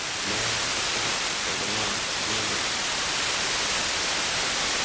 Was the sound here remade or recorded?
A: recorded